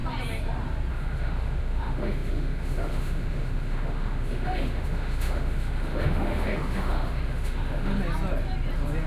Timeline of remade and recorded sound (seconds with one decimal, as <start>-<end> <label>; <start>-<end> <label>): 0.0-0.9 recorded; 0.9-7.9 remade; 7.9-9.1 recorded

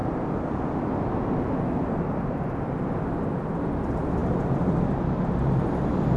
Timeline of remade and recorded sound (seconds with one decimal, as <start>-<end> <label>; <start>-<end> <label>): 0.0-6.2 recorded